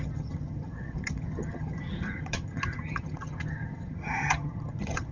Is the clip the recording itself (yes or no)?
no